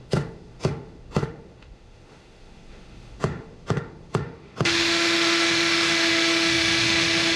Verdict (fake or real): fake